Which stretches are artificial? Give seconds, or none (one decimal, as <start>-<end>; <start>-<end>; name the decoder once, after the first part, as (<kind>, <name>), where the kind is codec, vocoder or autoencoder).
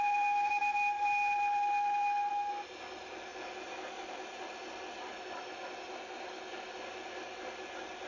5.1-5.7 (autoencoder, DAC-VAE)